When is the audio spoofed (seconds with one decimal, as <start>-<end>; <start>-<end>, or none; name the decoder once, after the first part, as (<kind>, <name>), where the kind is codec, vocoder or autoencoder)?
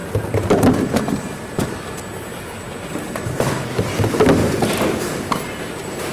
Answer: none